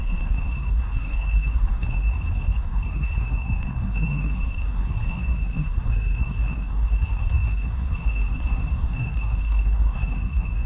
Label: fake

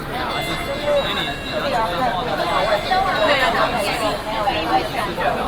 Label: real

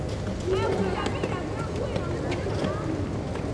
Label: real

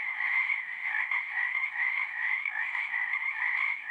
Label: fake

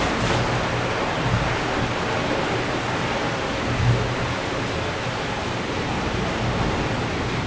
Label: real